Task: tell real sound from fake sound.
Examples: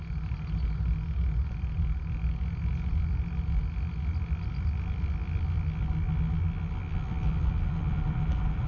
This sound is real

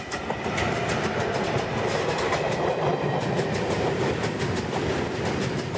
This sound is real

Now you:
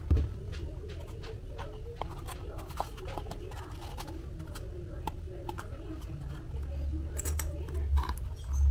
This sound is real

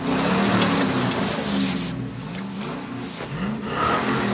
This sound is real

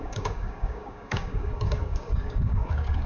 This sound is fake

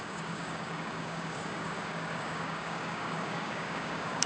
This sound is fake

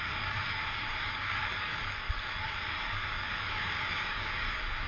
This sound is fake